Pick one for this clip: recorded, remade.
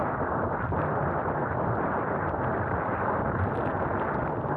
recorded